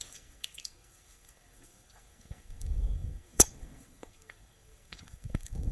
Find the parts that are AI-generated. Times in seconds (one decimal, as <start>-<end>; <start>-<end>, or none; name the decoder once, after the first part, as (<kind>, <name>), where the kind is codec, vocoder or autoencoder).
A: 0.0-5.7 (codec, SNAC)